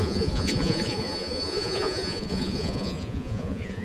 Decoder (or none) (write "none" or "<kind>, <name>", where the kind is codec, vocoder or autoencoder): vocoder, Vocos